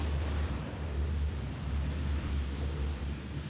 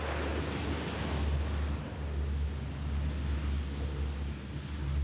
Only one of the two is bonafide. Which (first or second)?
second